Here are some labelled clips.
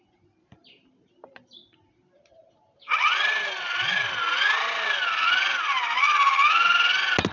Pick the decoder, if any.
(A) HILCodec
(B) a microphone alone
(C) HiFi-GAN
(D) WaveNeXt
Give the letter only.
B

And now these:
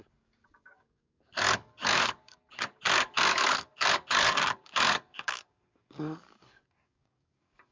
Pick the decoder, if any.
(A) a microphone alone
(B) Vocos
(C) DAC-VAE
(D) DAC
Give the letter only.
D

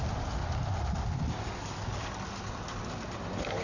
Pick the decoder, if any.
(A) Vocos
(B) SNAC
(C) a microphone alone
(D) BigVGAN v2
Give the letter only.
C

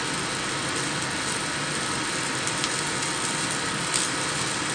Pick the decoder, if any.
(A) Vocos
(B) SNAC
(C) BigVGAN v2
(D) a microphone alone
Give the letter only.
D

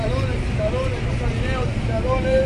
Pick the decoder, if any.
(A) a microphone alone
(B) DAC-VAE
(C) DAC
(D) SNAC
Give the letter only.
A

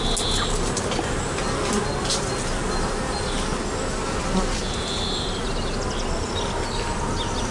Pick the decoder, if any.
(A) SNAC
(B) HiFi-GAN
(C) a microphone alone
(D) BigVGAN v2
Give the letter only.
C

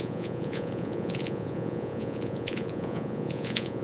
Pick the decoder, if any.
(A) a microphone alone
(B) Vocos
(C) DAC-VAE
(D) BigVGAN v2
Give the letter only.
B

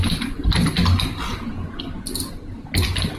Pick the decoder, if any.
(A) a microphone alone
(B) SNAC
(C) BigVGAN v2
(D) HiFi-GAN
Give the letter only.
A